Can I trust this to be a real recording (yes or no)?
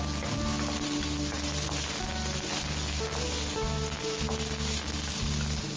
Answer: yes